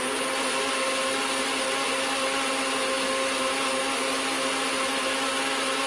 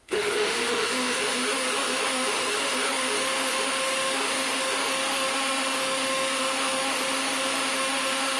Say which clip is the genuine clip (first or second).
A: first